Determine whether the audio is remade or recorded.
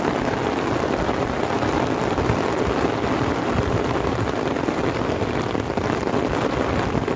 recorded